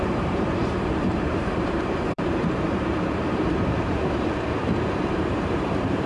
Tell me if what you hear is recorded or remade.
remade